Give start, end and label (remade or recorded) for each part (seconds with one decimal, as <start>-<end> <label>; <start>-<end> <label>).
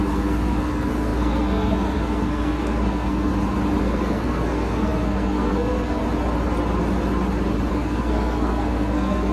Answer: 0.0-3.3 remade; 3.3-3.8 recorded; 3.8-6.0 remade; 6.0-7.7 recorded; 7.7-9.3 remade